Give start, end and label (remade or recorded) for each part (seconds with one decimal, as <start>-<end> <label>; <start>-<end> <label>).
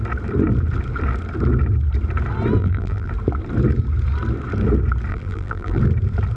0.0-2.6 recorded; 2.6-3.1 remade; 3.1-5.1 recorded; 5.1-5.8 remade; 5.8-6.4 recorded